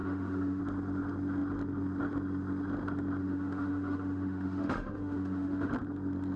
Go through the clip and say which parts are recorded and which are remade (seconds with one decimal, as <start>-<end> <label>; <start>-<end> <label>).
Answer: 0.0-0.6 remade; 0.6-3.2 recorded; 3.2-5.7 remade; 5.7-6.4 recorded